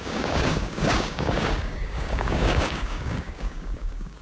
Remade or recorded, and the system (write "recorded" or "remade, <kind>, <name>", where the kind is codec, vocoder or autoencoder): remade, codec, DAC